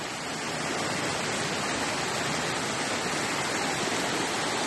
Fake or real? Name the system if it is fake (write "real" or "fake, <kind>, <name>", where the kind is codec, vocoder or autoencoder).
real